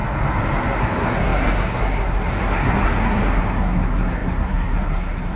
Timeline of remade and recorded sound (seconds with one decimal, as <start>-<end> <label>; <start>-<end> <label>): 0.0-0.8 recorded; 0.8-5.4 remade